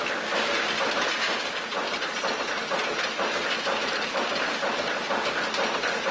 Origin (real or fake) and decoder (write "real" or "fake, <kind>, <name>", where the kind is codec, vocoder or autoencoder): real